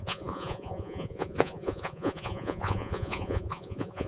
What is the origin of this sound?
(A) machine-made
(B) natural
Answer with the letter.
A